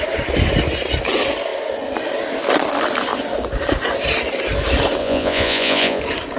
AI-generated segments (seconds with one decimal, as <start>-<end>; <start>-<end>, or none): 5.0-6.0